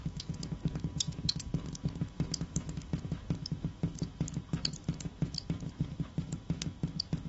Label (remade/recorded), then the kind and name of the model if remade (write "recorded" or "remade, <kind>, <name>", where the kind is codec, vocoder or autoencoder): remade, autoencoder, DAC-VAE